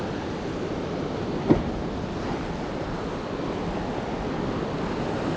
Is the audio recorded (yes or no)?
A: yes